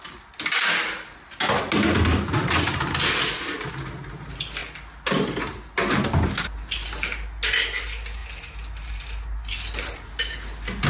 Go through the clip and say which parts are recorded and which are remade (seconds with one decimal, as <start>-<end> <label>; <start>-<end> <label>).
0.0-10.9 recorded